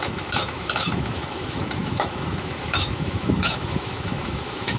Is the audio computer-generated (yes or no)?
yes